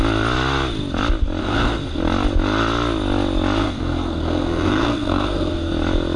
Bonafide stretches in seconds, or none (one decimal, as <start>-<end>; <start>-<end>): 0.0-1.4; 2.0-3.6; 5.7-6.2